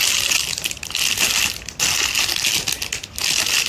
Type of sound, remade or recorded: recorded